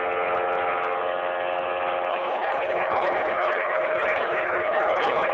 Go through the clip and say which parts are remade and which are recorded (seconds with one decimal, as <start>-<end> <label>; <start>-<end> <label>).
0.0-2.1 recorded; 2.1-5.3 remade